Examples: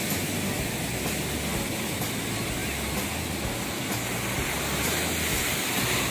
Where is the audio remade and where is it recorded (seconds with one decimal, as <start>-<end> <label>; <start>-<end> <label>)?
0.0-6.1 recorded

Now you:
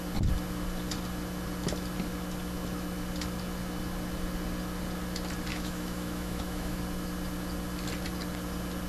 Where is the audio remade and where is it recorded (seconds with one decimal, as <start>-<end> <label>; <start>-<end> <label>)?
0.0-5.5 recorded; 5.5-6.8 remade; 6.8-8.9 recorded

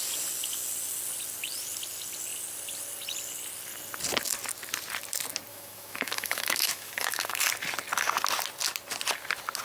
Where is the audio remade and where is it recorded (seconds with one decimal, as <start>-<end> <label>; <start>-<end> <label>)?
0.0-5.5 recorded; 5.5-7.4 remade; 7.4-9.6 recorded